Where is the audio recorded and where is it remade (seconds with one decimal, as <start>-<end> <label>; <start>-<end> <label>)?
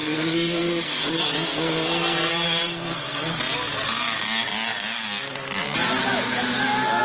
0.0-3.4 remade; 3.4-7.0 recorded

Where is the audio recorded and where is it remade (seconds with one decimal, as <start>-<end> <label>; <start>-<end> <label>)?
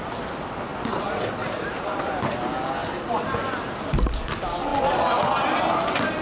0.0-6.2 recorded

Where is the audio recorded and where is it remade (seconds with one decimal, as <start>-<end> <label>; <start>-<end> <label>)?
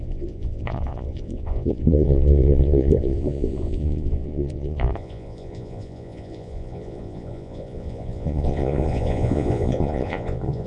0.0-10.7 remade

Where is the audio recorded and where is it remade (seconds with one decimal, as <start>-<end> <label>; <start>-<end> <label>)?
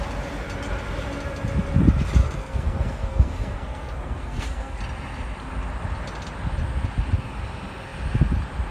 0.0-2.2 recorded; 2.2-4.8 remade; 4.8-8.7 recorded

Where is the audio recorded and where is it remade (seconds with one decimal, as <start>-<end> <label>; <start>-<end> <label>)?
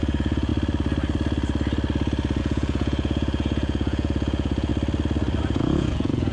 0.0-0.5 remade; 0.5-2.4 recorded; 2.4-4.7 remade; 4.7-5.4 recorded; 5.4-6.3 remade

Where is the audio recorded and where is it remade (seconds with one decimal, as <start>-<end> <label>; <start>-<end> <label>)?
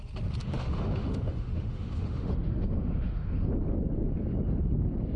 0.0-0.4 recorded; 0.4-3.5 remade; 3.5-5.2 recorded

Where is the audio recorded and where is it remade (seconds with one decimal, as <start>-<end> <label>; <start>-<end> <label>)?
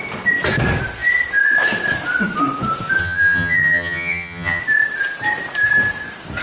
0.0-3.0 recorded; 3.0-4.6 remade; 4.6-6.4 recorded